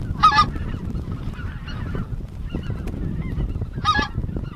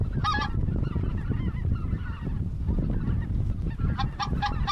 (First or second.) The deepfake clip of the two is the first